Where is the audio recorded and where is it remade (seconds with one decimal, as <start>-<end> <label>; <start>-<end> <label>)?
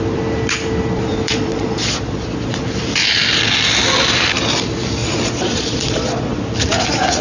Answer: 0.0-1.1 recorded; 1.1-2.6 remade; 2.6-5.0 recorded; 5.0-6.4 remade; 6.4-7.2 recorded